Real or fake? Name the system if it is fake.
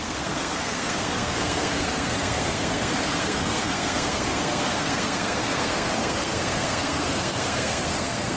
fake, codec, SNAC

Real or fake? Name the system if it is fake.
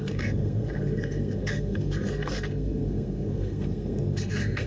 fake, codec, SNAC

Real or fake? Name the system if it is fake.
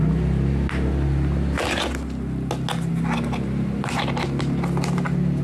real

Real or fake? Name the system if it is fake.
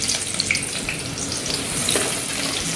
real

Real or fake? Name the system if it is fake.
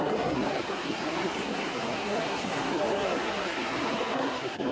fake, codec, SNAC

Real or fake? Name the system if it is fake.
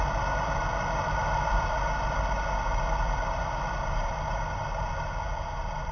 real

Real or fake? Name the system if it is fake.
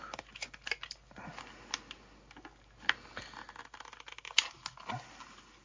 real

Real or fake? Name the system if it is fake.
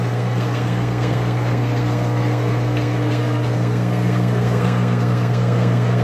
fake, codec, SNAC